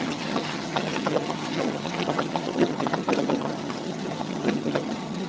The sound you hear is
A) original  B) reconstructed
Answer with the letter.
B